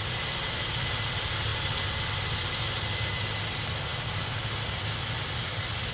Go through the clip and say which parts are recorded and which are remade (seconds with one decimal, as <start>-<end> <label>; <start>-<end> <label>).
0.0-5.9 recorded